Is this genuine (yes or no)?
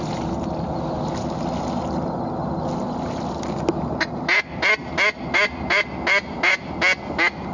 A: yes